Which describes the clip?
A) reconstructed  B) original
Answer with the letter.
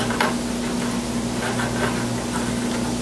B